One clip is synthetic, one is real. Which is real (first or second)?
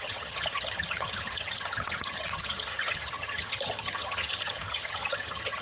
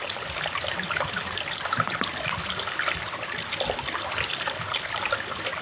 second